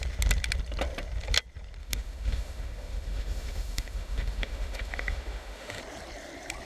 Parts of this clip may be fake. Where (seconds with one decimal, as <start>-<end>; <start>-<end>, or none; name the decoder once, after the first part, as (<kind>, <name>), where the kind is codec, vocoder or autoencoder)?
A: 1.8-5.8 (autoencoder, DAC-VAE)